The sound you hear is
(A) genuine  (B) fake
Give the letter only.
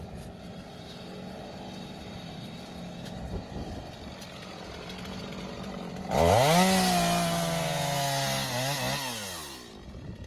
A